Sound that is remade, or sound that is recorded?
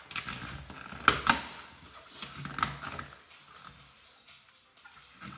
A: recorded